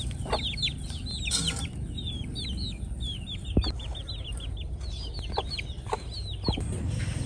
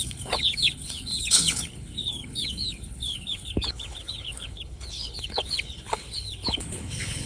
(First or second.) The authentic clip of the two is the first